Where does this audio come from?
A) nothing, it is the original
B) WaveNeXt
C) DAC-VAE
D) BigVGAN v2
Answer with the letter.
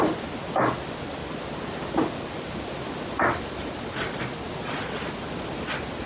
A